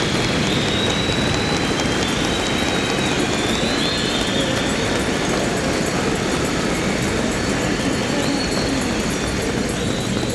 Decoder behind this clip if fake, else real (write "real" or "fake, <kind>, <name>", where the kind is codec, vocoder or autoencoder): real